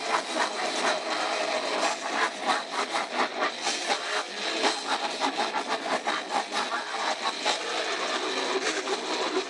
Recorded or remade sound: recorded